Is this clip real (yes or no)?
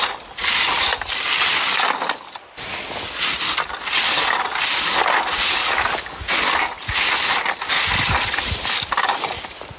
yes